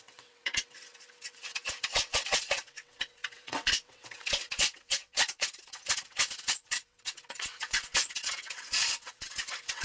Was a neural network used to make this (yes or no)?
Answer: yes